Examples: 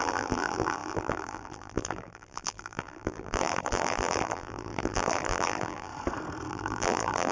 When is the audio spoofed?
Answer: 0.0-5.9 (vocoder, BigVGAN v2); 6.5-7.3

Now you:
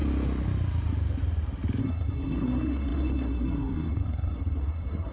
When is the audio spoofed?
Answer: 1.8-5.1 (codec, SNAC)

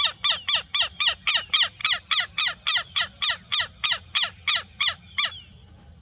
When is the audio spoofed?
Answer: none

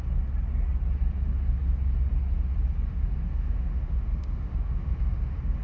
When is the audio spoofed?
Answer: 2.9-5.6 (autoencoder, DAC-VAE)

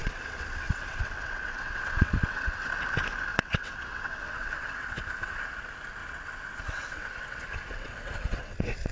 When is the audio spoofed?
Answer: 0.0-2.7 (vocoder, WaveNeXt); 3.3-5.4; 6.0-8.9

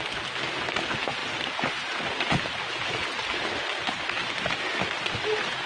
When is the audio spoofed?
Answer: none

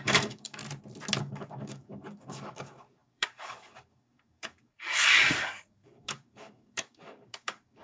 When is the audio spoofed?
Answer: 0.0-0.6 (codec, DAC); 1.2-7.8

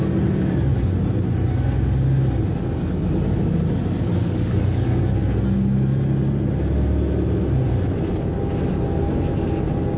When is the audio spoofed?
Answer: 4.2-5.0 (codec, DAC)